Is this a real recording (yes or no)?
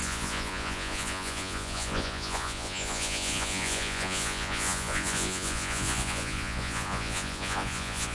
no